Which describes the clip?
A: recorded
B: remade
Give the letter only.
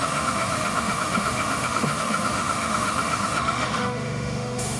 B